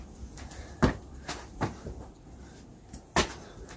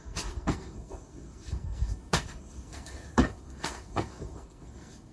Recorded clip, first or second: first